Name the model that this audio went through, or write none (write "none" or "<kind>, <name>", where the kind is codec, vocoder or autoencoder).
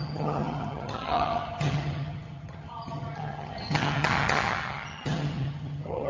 vocoder, HiFi-GAN